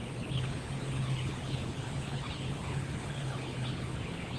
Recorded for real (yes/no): no